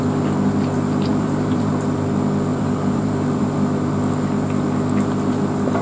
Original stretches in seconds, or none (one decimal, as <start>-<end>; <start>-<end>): 0.0-1.1; 1.7-2.5; 3.5-5.8